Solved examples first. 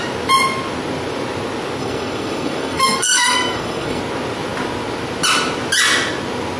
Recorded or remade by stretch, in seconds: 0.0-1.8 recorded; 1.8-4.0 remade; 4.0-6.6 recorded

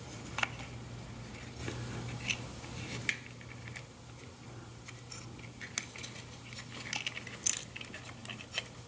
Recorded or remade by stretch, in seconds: 0.0-8.9 recorded

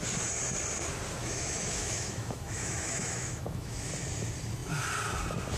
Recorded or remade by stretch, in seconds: 0.0-1.2 recorded; 1.2-3.9 remade; 3.9-5.6 recorded

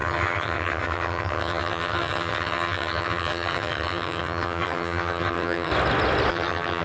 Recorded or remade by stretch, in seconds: 0.0-5.7 remade; 5.7-6.3 recorded; 6.3-6.8 remade